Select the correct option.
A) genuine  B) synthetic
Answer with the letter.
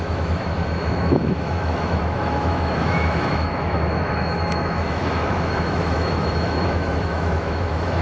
B